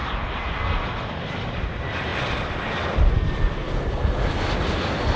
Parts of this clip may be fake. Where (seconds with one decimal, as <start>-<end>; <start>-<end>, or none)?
1.0-3.6